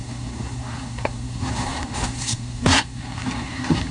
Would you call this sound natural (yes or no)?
no